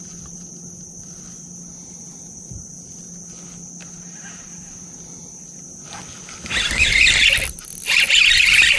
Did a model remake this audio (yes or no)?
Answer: no